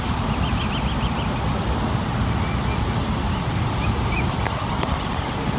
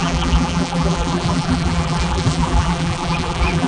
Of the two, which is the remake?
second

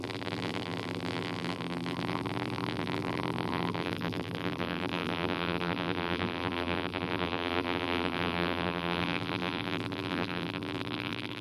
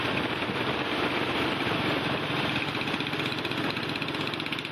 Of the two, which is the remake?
first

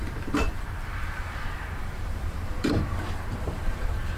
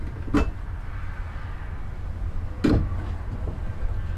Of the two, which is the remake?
first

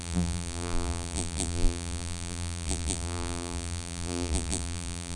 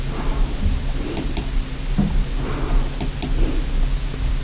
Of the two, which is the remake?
first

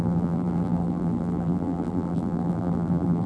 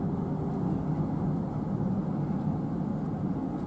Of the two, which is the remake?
first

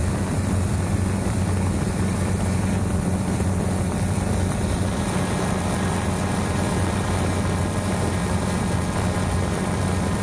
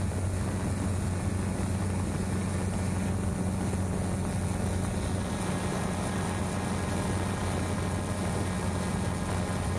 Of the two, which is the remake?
first